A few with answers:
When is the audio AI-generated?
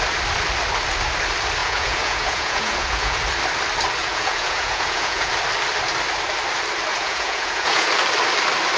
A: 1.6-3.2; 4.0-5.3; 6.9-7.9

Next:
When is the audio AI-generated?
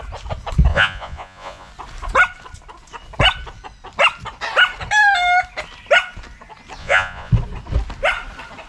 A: 0.7-1.7; 6.8-7.3